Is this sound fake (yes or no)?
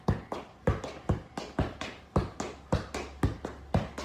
no